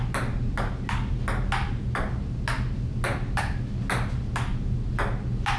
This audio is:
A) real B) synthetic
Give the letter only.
A